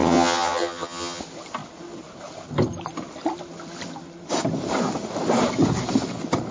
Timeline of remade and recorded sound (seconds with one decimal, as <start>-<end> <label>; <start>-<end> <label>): 0.0-1.2 remade; 1.2-6.5 recorded